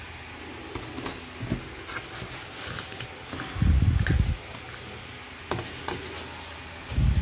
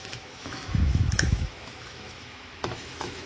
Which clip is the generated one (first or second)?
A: second